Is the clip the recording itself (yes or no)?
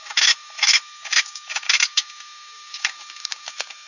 no